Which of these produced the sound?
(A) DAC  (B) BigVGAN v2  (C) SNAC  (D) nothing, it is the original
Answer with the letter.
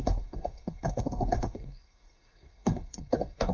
C